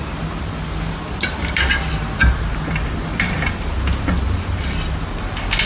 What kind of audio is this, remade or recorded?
recorded